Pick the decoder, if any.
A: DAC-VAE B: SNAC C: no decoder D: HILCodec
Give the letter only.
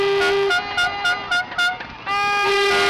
C